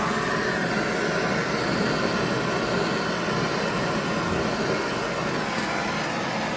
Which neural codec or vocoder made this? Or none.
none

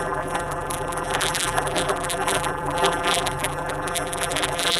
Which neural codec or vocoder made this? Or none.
vocoder, BigVGAN v2